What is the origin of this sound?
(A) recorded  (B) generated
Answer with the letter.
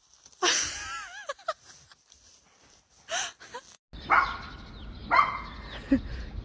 A